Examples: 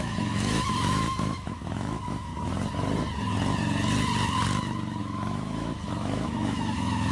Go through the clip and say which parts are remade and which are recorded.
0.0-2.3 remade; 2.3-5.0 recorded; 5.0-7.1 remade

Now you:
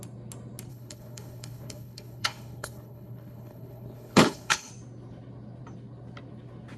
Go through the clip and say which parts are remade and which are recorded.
0.0-0.7 recorded; 0.7-4.7 remade; 4.7-6.8 recorded

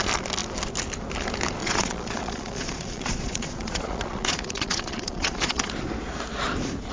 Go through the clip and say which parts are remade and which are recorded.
0.0-1.6 recorded; 1.6-5.7 remade; 5.7-6.9 recorded

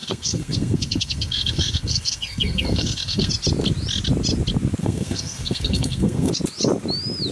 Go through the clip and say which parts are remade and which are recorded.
0.0-3.3 remade; 3.3-4.8 recorded; 4.8-6.3 remade; 6.3-7.3 recorded